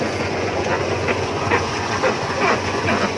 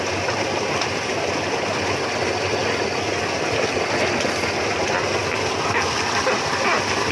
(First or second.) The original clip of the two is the second